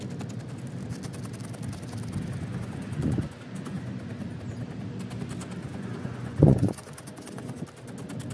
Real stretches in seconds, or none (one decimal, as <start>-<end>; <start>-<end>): 0.0-2.5; 4.0-5.6; 7.6-8.3